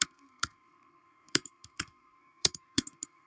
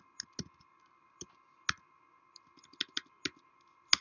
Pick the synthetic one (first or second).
first